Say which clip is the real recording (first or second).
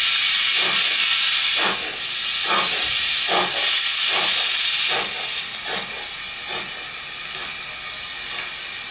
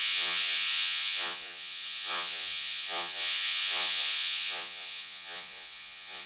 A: first